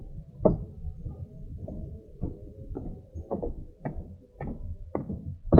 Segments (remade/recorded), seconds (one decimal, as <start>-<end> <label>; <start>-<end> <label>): 0.0-3.4 remade; 3.4-5.6 recorded